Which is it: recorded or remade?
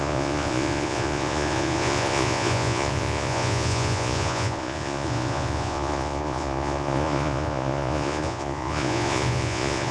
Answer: remade